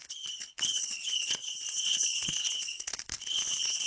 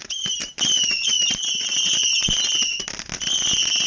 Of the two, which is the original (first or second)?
second